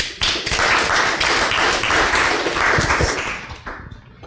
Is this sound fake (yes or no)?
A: no